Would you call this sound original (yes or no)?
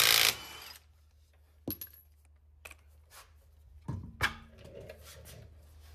yes